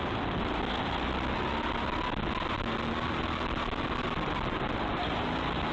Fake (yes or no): no